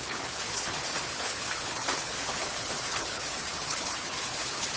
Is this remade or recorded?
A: remade